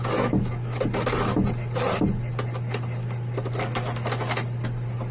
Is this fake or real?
real